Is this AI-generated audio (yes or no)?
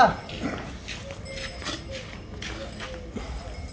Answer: no